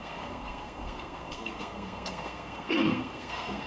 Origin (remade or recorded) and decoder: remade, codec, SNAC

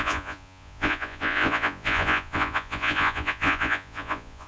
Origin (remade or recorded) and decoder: remade, vocoder, Vocos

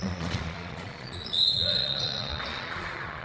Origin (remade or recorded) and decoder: remade, vocoder, Vocos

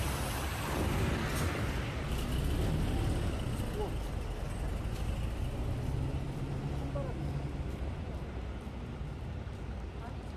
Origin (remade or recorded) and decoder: recorded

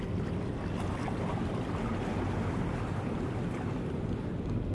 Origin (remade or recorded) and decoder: recorded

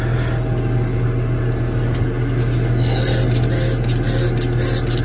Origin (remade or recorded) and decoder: recorded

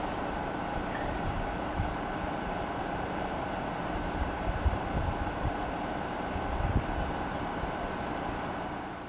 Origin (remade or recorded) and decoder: remade, vocoder, BigVGAN v2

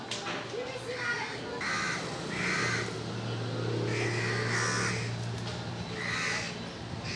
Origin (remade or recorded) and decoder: recorded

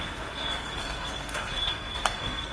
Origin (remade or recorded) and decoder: remade, codec, SNAC